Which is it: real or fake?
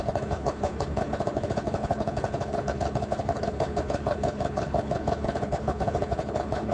fake